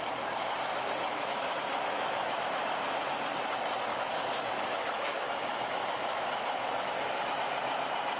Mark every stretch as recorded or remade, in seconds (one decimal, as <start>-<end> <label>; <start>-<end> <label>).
0.0-1.1 recorded; 1.1-2.4 remade; 2.4-3.9 recorded; 3.9-7.3 remade; 7.3-8.2 recorded